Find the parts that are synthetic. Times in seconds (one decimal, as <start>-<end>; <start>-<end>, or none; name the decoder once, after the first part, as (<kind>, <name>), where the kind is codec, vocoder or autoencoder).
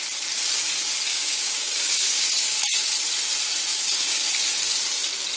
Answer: 1.1-3.0 (codec, DAC); 3.7-4.3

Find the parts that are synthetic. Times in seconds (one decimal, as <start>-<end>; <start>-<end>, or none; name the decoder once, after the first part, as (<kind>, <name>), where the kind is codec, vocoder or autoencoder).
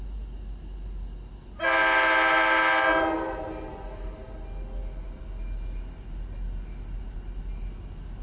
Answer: none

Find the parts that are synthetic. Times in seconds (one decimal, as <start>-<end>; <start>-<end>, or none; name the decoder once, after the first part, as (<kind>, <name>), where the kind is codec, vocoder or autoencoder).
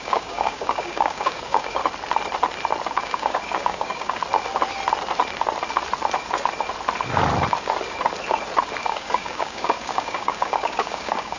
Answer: 0.0-1.8 (codec, DAC); 2.9-4.2; 8.8-11.4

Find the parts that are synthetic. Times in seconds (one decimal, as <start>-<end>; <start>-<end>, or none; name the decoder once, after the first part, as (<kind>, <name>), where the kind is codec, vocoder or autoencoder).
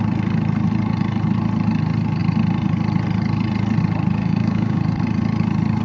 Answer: 4.2-4.8 (codec, DAC)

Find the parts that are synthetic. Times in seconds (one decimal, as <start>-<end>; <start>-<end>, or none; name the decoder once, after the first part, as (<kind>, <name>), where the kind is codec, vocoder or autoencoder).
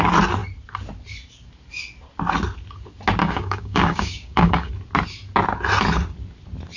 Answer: 3.2-4.7 (codec, DAC)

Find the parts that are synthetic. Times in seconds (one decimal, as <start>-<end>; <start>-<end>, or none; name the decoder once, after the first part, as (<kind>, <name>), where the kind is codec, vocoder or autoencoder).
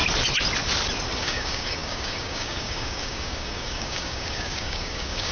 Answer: 1.2-5.3 (codec, DAC)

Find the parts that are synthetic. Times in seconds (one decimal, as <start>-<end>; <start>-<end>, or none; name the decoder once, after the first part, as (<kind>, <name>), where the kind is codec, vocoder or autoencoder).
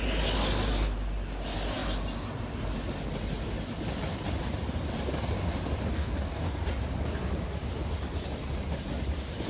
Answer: 5.9-6.6 (codec, DAC)